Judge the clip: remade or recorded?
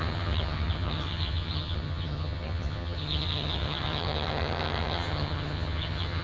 remade